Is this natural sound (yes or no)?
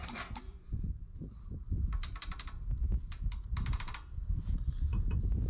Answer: no